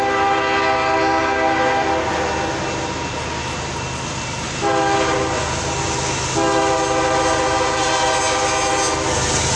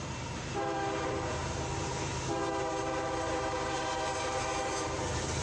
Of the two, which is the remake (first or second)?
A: second